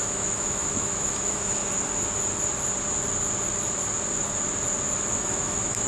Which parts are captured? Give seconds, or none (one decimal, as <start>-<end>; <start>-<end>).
1.6-5.1